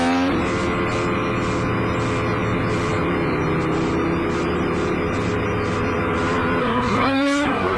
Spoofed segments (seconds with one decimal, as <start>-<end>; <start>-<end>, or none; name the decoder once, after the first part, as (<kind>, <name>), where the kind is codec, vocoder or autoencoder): 6.6-7.8 (codec, SNAC)

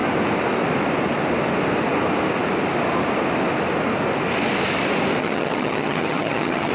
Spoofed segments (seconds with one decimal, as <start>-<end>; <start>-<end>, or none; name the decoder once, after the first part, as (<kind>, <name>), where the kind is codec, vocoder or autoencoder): 5.2-6.7 (vocoder, HiFi-GAN)

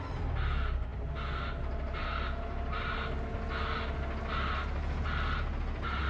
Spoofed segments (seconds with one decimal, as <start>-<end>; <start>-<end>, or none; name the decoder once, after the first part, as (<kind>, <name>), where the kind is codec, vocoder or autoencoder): none

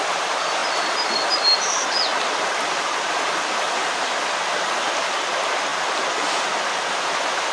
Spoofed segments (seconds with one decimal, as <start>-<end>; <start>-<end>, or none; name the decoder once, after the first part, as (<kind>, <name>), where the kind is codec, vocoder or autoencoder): none

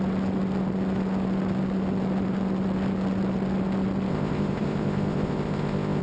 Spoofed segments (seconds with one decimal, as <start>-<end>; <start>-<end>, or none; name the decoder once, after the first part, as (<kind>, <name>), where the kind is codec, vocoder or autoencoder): 4.1-6.0 (codec, ZipCodec)

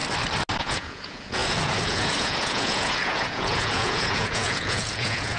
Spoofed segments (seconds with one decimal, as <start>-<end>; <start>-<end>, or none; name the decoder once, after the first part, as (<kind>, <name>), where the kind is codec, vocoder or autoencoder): 0.6-5.4 (vocoder, Vocos)

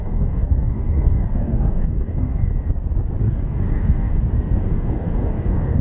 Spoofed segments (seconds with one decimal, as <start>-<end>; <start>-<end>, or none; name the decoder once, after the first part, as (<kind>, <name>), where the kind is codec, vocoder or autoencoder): 0.0-2.5 (codec, DAC); 3.2-4.1; 4.6-5.8